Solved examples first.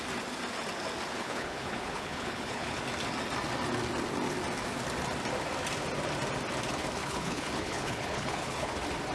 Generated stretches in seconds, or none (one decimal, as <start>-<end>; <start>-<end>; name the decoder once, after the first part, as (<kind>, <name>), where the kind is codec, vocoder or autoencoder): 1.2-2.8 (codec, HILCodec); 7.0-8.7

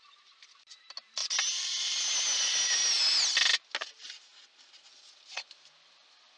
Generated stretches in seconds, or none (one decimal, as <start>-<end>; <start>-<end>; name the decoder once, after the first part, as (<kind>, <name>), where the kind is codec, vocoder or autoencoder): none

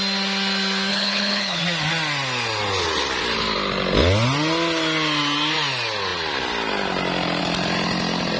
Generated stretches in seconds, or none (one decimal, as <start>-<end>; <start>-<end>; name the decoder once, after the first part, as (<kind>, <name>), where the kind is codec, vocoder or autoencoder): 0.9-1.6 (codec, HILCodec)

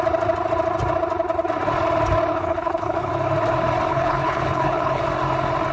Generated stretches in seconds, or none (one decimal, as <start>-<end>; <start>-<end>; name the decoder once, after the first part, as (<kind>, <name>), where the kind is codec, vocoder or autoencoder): 2.3-3.1 (codec, HILCodec); 3.9-5.0